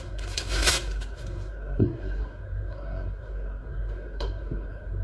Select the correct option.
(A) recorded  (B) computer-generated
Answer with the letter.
B